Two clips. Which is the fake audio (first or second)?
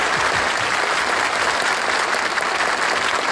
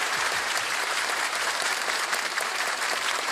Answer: second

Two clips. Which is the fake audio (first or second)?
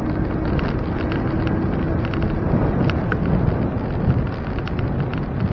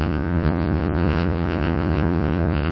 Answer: second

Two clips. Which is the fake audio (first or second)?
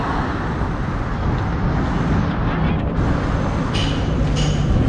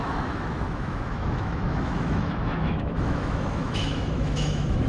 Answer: second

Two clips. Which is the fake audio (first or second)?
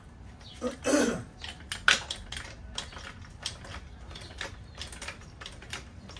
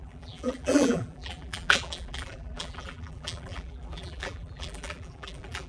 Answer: second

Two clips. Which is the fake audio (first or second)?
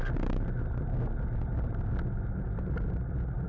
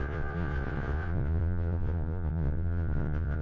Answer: second